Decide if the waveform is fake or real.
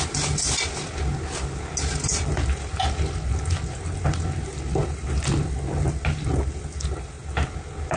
real